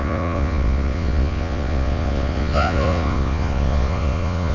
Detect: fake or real fake